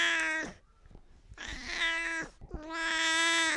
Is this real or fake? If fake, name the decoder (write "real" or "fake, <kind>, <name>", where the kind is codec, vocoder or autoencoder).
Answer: real